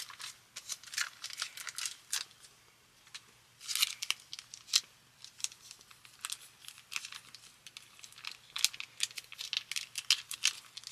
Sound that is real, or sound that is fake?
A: real